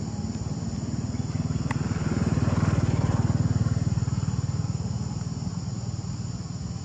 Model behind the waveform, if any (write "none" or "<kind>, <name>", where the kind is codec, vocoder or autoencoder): none